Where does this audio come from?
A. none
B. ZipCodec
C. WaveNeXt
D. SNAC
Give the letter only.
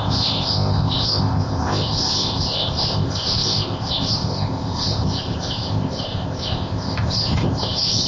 B